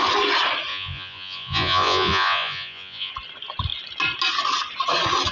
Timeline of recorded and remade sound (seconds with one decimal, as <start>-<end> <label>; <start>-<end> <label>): 0.0-0.7 recorded; 0.7-3.1 remade; 3.1-5.3 recorded